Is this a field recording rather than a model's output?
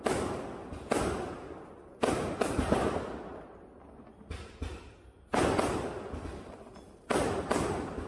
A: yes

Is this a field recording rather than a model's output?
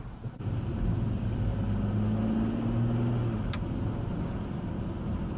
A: yes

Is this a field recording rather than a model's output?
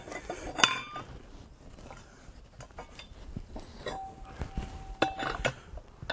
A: yes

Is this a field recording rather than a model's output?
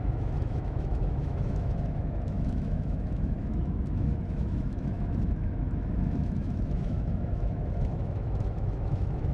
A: no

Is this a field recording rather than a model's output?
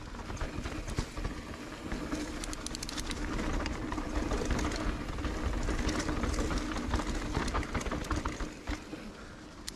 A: yes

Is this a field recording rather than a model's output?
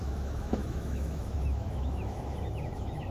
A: no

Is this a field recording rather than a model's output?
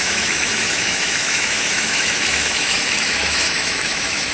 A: no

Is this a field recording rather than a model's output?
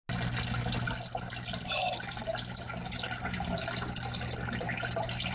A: yes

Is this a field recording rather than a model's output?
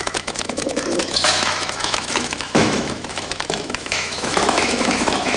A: no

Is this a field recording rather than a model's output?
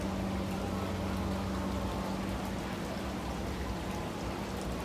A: yes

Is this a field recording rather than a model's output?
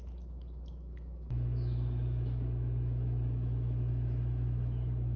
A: no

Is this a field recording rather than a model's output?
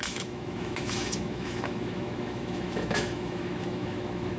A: no